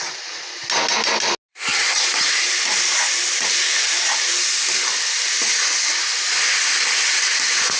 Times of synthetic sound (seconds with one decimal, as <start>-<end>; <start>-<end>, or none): none